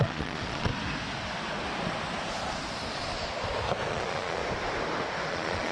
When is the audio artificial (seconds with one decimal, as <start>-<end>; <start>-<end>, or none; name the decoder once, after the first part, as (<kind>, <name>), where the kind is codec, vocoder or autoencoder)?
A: 0.0-0.7 (vocoder, Vocos); 3.9-4.4; 5.3-5.7